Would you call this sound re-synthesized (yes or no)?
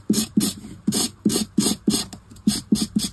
no